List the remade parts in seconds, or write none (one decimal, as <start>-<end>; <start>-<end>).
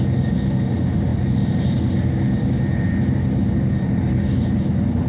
none